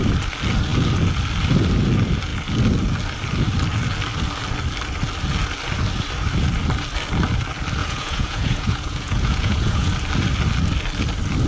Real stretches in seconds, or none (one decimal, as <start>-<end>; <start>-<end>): 0.0-7.8; 9.9-11.5